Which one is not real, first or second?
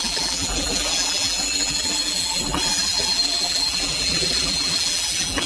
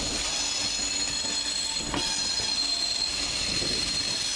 first